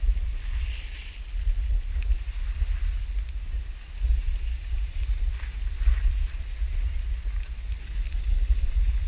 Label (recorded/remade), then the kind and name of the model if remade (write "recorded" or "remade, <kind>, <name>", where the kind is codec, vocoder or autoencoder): recorded